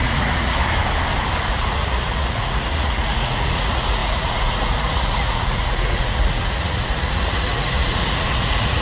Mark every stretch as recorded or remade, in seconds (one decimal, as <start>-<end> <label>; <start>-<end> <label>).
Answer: 0.0-0.6 remade; 0.6-1.5 recorded; 1.5-8.8 remade